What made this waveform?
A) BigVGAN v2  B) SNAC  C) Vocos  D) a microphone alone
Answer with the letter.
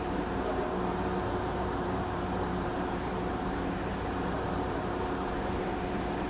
A